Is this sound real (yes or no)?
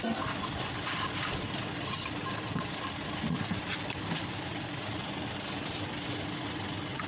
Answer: yes